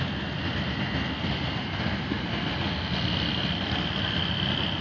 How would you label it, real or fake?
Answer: real